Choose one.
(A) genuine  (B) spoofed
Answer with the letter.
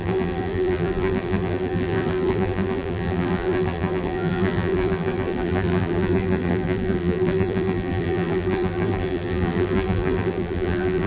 B